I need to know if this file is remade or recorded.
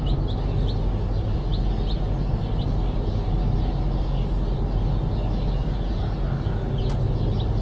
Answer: recorded